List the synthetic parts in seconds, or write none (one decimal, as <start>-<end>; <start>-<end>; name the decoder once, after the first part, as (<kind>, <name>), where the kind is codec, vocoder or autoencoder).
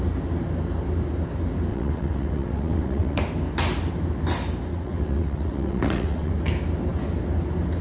1.7-3.2 (vocoder, WaveNeXt); 4.7-6.3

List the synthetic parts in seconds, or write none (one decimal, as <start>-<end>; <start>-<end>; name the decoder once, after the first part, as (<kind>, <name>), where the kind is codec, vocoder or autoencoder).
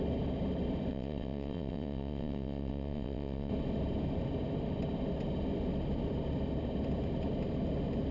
0.9-3.5 (vocoder, WaveNeXt)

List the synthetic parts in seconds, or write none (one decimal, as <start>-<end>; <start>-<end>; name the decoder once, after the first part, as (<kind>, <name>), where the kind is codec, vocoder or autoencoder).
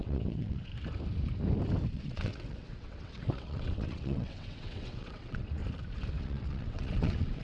0.0-0.7 (vocoder, WaveNeXt); 1.9-5.6; 6.2-7.4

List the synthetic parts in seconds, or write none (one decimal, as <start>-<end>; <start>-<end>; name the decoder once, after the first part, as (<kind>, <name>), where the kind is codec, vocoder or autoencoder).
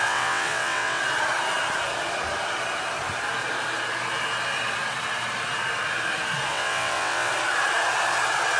0.0-1.0 (vocoder, WaveNeXt); 6.5-7.3